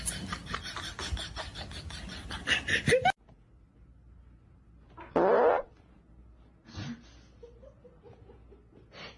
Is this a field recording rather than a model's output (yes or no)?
yes